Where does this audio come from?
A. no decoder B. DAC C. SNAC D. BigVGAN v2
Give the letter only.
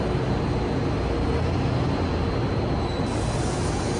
A